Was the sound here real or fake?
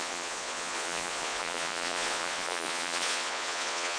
fake